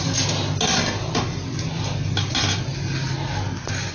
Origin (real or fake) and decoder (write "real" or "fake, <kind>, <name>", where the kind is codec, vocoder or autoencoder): real